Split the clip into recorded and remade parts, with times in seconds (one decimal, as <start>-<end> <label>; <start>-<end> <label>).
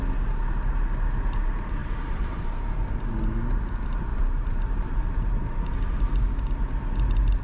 0.0-1.8 recorded; 1.8-3.0 remade; 3.0-4.1 recorded; 4.1-6.0 remade; 6.0-7.4 recorded